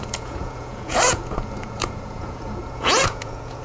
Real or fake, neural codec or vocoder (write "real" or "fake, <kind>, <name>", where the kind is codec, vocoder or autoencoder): fake, vocoder, Vocos